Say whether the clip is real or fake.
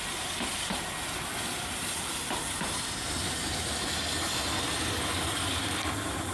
real